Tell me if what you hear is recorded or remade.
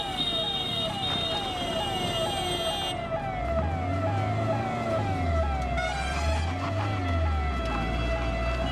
recorded